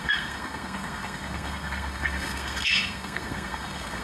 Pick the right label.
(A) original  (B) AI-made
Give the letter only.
B